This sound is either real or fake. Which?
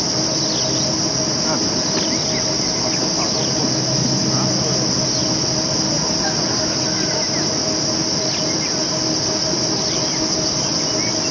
real